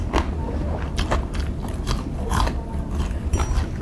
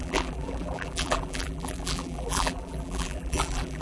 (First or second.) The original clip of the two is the first